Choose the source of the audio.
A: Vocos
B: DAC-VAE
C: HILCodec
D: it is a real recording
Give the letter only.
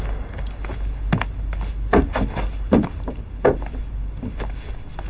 D